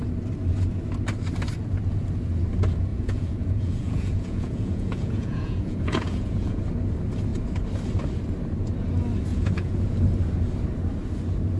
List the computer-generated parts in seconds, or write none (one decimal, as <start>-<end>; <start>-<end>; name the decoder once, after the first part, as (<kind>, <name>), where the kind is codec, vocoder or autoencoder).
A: 2.9-6.6 (vocoder, Vocos); 9.3-10.0